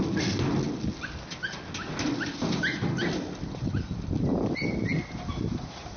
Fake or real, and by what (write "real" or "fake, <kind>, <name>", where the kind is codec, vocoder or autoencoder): real